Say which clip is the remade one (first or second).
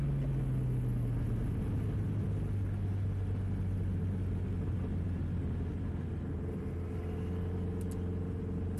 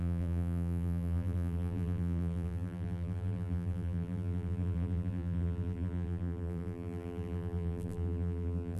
second